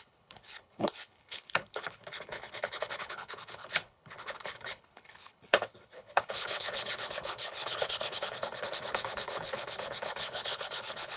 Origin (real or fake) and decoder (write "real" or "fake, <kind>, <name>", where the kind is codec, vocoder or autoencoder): fake, codec, HILCodec